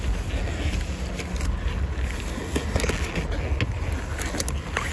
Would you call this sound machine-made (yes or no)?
no